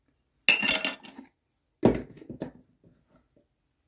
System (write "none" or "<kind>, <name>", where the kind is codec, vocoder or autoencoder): none